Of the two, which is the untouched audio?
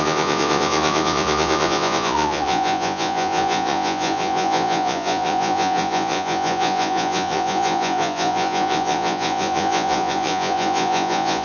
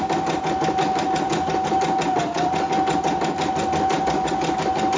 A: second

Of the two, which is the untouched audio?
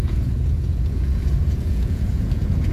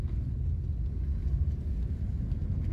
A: second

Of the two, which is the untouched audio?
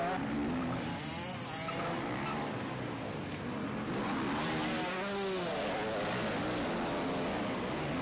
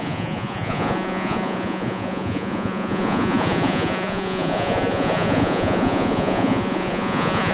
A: first